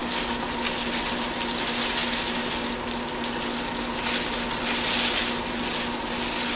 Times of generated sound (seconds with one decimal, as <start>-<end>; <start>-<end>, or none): none